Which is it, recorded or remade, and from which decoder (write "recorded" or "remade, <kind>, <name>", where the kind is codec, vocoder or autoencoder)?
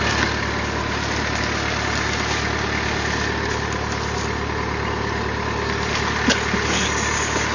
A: recorded